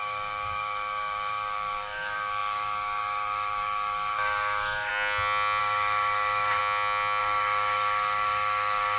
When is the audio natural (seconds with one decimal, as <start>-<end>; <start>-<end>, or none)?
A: 4.9-5.6; 6.6-7.2